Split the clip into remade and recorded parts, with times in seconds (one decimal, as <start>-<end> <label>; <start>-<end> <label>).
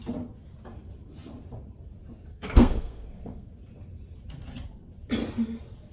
0.0-2.3 recorded; 2.3-3.5 remade; 3.5-5.9 recorded